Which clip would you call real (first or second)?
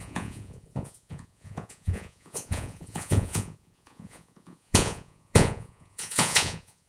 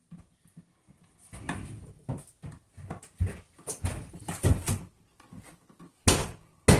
second